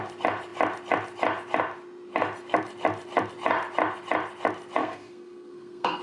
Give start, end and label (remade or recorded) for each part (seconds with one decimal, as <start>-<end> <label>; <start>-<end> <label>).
0.0-4.8 recorded; 4.8-6.0 remade